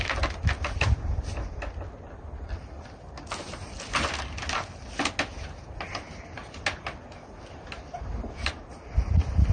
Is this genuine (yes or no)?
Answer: yes